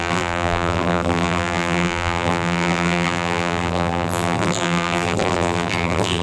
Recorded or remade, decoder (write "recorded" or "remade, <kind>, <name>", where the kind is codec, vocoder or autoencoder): remade, vocoder, BigVGAN v2